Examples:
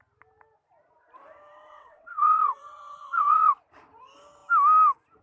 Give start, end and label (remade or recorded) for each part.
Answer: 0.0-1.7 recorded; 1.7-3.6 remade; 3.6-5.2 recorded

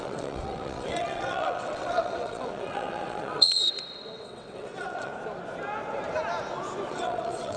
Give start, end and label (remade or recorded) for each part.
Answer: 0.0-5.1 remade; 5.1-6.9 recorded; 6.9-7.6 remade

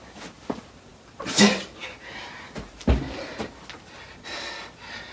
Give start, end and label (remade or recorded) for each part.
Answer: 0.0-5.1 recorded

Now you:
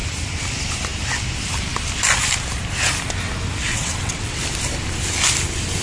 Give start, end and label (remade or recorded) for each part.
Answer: 0.0-3.7 recorded; 3.7-4.4 remade; 4.4-5.8 recorded

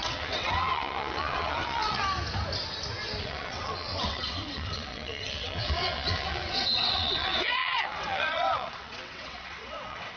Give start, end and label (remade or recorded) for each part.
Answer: 0.0-2.0 remade; 2.0-3.2 recorded; 3.2-10.2 remade

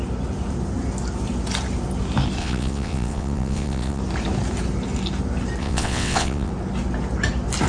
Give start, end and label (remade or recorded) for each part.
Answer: 0.0-2.4 recorded; 2.4-4.0 remade; 4.0-5.6 recorded; 5.6-6.5 remade; 6.5-7.7 recorded

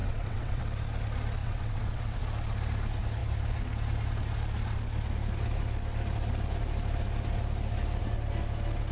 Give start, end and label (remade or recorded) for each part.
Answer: 0.0-0.6 remade; 0.6-1.4 recorded; 1.4-2.2 remade; 2.2-8.9 recorded

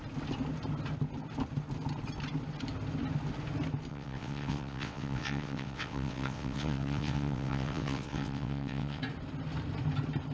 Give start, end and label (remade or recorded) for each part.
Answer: 0.0-3.9 recorded; 3.9-9.0 remade; 9.0-10.3 recorded